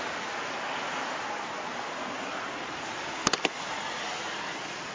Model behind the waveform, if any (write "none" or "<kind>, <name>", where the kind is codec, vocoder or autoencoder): none